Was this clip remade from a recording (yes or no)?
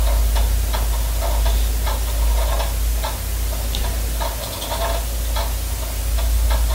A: no